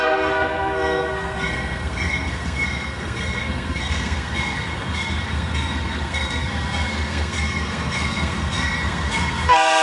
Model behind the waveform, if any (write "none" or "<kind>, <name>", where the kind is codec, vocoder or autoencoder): codec, SNAC